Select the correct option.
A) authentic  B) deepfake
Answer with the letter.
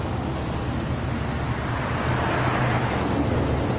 A